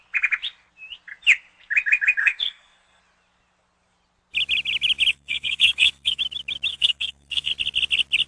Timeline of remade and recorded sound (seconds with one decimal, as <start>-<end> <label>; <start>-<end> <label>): 0.0-2.2 recorded; 2.2-3.0 remade; 3.0-5.1 recorded; 5.1-6.2 remade; 6.2-6.7 recorded; 6.7-7.5 remade; 7.5-8.3 recorded